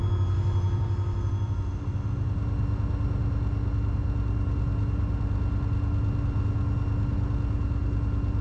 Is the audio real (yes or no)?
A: yes